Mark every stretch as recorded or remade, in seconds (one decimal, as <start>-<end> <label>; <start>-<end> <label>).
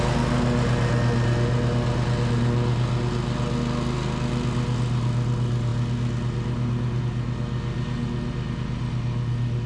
0.0-9.7 recorded